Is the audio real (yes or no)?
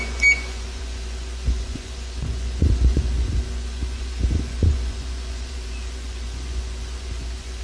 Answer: no